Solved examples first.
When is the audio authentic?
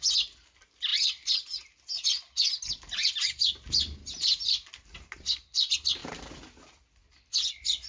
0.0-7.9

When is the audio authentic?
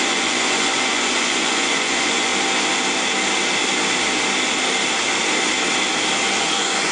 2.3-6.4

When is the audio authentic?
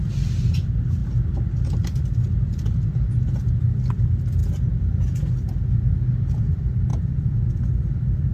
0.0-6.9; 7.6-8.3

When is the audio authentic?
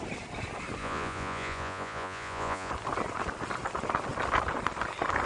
0.0-0.8; 2.7-5.3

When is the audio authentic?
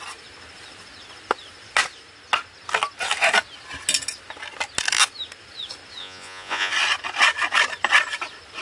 0.0-6.0; 6.7-8.6